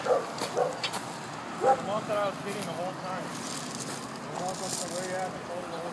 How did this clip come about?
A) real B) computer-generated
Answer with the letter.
A